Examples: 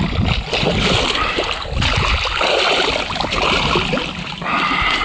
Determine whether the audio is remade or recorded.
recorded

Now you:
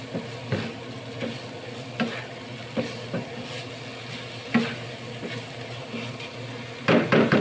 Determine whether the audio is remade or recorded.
recorded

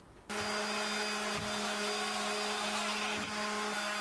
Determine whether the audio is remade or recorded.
recorded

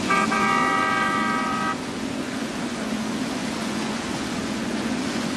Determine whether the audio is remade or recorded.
remade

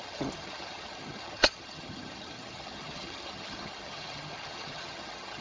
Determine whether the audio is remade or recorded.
remade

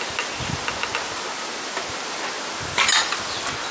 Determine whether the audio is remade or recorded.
recorded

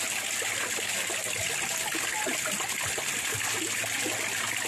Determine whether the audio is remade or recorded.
recorded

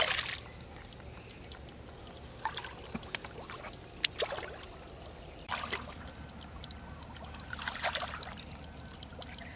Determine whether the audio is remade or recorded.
remade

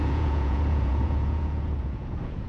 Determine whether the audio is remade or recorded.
remade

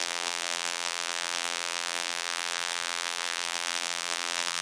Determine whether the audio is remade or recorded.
remade